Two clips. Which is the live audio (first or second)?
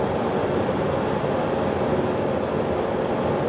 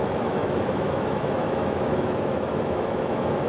first